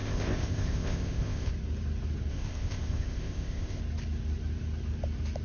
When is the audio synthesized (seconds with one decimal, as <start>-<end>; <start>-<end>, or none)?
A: 0.0-1.5; 2.3-3.8